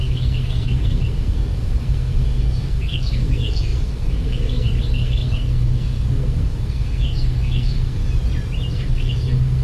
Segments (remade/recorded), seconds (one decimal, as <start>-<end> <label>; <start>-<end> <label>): 0.0-8.0 remade; 8.0-8.7 recorded; 8.7-9.6 remade